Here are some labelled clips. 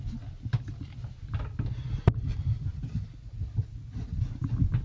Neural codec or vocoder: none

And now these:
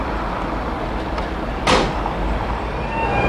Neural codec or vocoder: none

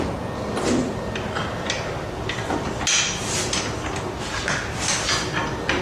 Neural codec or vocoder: none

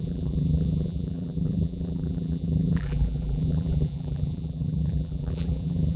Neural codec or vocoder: vocoder, BigVGAN v2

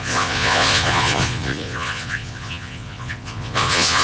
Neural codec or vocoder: vocoder, Vocos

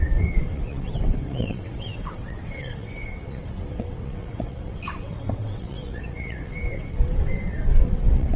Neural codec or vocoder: vocoder, WaveNeXt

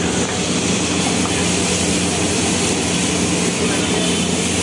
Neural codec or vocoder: none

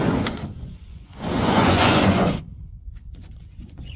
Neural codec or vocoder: vocoder, Vocos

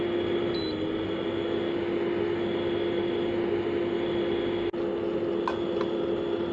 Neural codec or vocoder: none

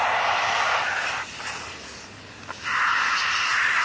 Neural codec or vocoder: none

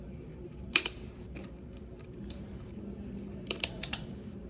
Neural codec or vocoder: vocoder, BigVGAN v2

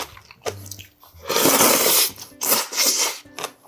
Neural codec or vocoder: none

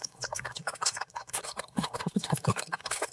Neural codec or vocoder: codec, SNAC